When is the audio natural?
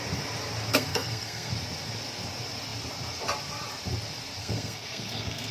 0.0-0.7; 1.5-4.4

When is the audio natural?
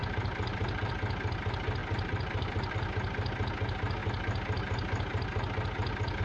0.9-1.8; 2.7-6.2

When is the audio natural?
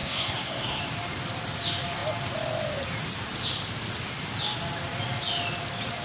0.8-6.0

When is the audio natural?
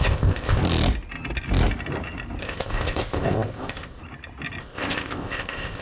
0.6-2.4; 4.0-4.6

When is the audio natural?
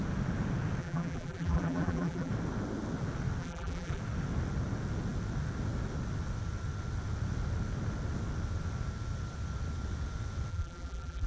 0.0-0.8; 2.3-3.4; 4.0-10.5